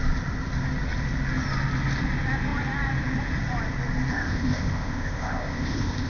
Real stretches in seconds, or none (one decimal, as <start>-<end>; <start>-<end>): 0.0-4.1